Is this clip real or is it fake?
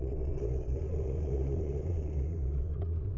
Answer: fake